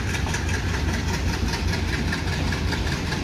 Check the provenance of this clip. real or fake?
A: fake